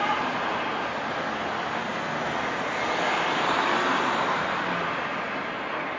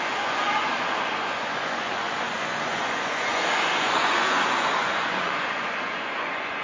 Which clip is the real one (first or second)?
first